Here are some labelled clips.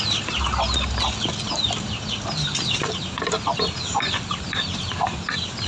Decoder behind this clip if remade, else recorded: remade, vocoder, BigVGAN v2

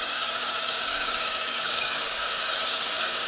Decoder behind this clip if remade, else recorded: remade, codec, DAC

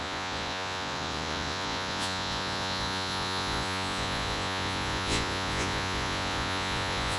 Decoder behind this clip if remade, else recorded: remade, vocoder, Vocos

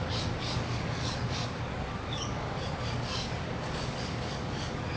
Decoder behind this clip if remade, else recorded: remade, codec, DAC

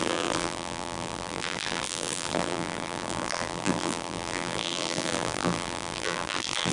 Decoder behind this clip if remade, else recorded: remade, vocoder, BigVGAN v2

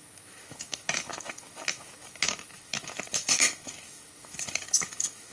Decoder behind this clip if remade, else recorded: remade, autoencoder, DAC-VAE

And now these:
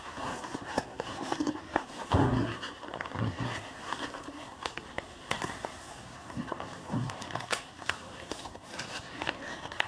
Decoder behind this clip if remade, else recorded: remade, codec, SNAC